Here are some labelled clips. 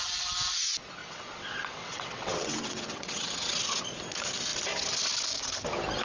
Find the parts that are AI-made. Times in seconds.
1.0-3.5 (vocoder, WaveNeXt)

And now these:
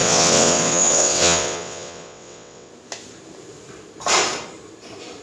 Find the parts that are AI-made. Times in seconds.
0.0-2.7 (vocoder, WaveNeXt)

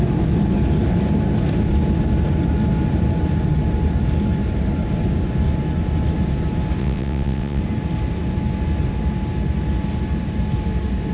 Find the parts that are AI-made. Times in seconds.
6.8-7.6 (vocoder, WaveNeXt)

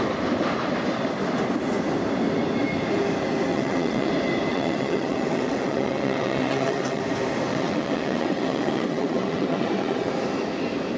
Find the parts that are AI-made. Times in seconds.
3.5-4.1 (vocoder, WaveNeXt); 4.5-7.0; 7.5-10.1

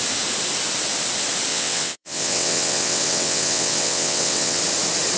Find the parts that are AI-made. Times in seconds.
1.5-4.6 (vocoder, WaveNeXt)

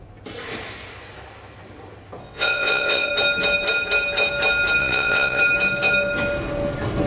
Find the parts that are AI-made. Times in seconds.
2.2-3.1 (vocoder, WaveNeXt); 4.8-5.4

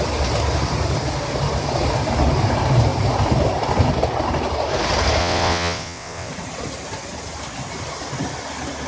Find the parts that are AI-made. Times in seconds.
5.2-6.3 (vocoder, WaveNeXt)